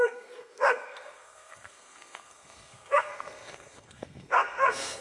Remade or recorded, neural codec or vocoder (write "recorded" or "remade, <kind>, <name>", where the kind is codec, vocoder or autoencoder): remade, codec, SNAC